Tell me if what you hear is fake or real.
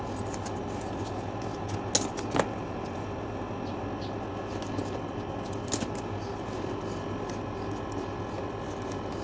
real